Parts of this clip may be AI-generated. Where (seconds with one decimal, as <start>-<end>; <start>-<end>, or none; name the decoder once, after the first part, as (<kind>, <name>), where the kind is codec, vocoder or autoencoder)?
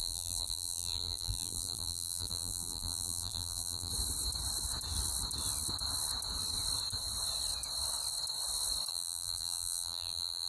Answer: 0.0-3.9 (vocoder, BigVGAN v2); 8.9-10.5